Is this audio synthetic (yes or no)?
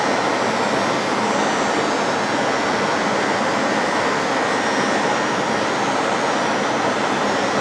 no